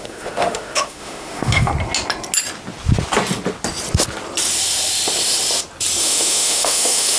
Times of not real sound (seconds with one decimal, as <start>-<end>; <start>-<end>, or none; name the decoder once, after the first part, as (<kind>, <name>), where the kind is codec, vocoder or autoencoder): 0.0-1.7 (autoencoder, DAC-VAE); 6.0-7.2